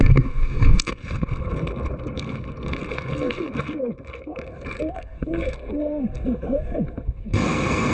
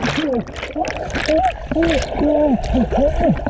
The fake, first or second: first